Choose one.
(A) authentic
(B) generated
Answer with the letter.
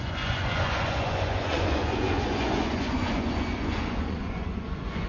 B